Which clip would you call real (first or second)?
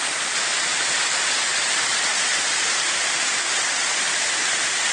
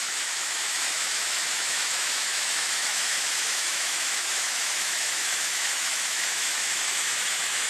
first